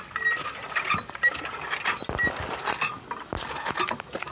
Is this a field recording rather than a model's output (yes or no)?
yes